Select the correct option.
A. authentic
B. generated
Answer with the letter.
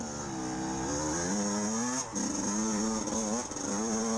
A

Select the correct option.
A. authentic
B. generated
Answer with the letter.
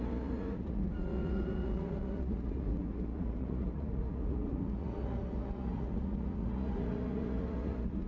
B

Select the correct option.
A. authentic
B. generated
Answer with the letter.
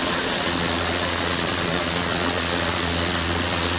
B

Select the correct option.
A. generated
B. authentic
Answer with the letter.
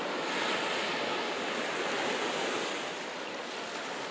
B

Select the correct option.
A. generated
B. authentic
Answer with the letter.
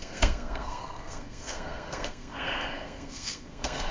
A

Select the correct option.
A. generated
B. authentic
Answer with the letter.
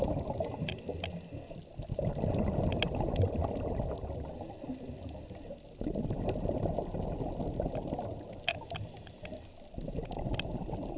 B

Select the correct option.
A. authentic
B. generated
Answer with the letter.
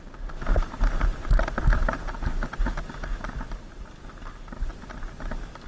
A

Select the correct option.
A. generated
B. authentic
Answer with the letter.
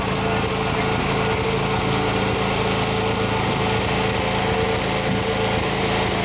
B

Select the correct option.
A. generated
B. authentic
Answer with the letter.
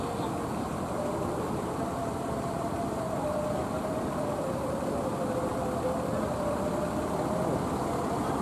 A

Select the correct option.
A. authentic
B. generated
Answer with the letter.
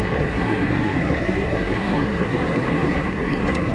B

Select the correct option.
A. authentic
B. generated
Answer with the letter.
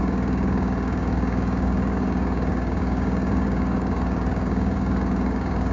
B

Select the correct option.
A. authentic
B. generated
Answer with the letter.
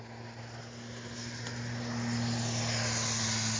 A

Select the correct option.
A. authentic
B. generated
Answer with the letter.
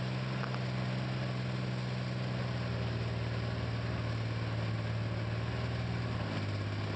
A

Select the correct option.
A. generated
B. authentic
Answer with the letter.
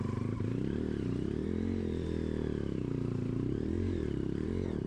A